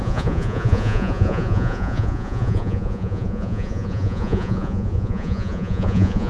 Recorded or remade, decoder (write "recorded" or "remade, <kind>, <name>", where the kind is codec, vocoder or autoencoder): remade, vocoder, Vocos